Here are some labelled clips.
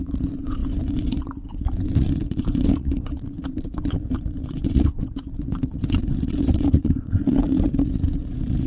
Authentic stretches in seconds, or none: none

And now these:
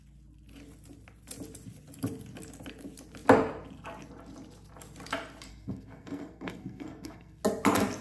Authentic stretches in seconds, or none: 0.0-5.5; 7.4-8.0

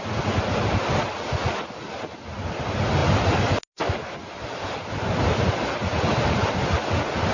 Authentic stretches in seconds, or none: 0.0-7.3